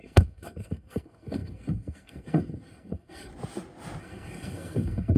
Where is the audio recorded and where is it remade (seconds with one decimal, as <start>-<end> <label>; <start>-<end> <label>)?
0.0-3.3 remade; 3.3-4.0 recorded; 4.0-5.2 remade